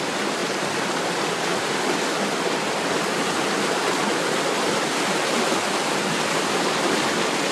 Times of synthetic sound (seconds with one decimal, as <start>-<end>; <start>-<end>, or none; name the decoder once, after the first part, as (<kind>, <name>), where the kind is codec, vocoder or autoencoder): none